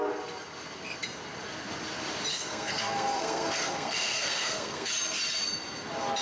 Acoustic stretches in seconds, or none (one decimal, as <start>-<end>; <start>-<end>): 0.0-2.3; 4.9-6.2